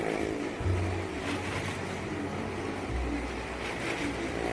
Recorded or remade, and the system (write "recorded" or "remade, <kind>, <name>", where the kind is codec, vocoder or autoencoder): recorded